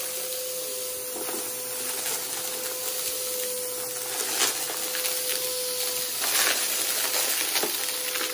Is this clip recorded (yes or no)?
yes